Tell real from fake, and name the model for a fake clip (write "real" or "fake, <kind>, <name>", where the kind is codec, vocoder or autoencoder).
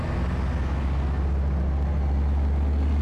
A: real